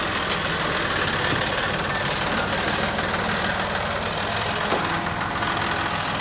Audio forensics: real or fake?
real